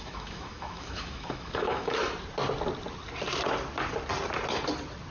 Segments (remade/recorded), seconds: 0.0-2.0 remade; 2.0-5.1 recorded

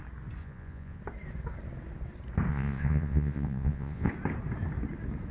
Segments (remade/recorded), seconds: 0.0-0.4 recorded; 0.4-1.0 remade; 1.0-2.5 recorded; 2.5-4.1 remade; 4.1-5.3 recorded

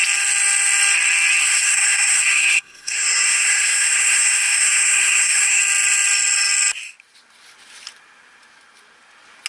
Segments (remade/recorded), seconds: 0.0-1.4 recorded; 1.4-5.6 remade; 5.6-9.5 recorded